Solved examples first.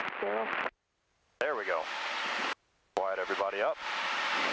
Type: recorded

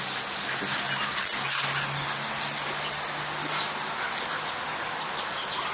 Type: recorded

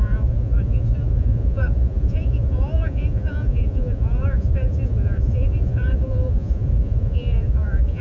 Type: remade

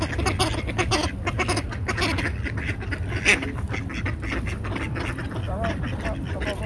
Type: recorded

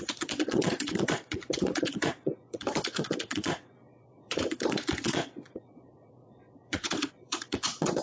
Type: remade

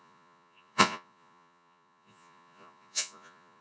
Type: remade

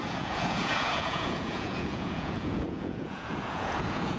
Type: remade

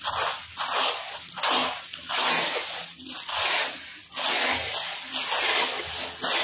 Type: recorded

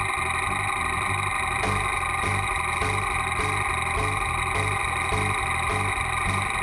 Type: recorded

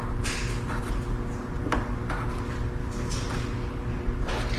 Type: recorded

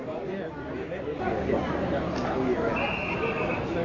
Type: recorded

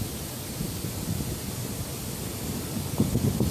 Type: recorded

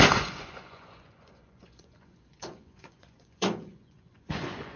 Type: remade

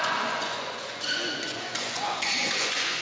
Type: remade